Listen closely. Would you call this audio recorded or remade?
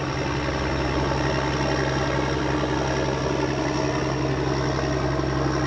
recorded